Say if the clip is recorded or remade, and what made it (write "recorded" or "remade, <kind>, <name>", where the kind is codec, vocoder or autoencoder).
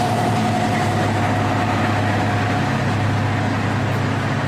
recorded